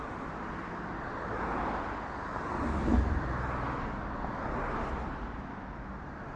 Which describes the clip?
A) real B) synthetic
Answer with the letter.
A